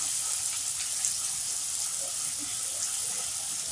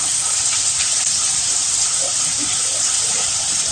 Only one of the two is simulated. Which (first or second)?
second